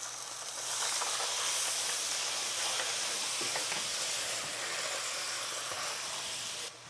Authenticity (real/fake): real